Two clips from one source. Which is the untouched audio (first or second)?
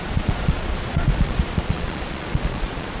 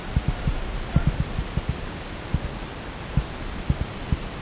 second